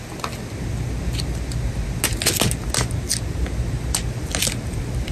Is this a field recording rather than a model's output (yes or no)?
yes